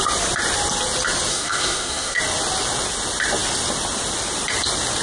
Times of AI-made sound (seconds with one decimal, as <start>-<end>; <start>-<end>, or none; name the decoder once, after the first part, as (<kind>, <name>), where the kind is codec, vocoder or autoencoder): 1.3-2.2 (codec, SNAC)